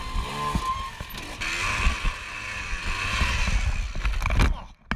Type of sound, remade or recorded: recorded